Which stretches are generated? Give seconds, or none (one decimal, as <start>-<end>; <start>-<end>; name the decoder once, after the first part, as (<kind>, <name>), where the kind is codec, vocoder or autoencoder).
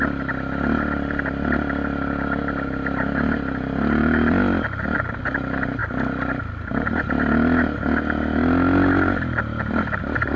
none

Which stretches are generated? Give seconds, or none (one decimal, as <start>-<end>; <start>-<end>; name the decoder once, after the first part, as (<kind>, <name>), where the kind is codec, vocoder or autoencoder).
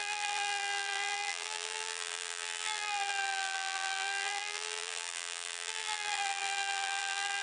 0.0-7.4 (vocoder, BigVGAN v2)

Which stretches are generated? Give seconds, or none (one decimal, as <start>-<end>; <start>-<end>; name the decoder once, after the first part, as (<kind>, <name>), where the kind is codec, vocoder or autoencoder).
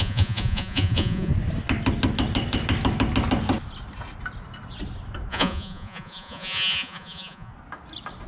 0.0-1.3 (vocoder, Vocos); 5.3-7.5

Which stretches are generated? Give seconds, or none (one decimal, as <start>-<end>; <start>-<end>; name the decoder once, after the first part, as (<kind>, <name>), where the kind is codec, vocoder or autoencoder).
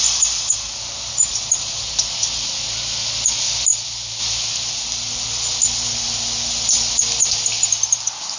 none